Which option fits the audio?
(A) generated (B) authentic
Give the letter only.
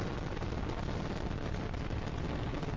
B